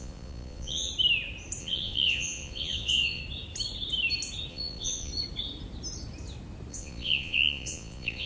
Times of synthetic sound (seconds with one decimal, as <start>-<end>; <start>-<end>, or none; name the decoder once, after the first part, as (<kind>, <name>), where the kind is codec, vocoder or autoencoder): 0.0-0.9 (vocoder, Vocos); 1.6-3.2; 4.5-5.1; 6.7-8.3